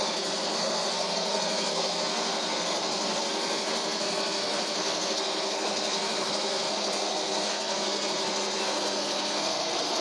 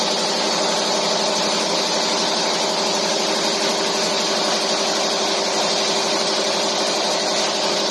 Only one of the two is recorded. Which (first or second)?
second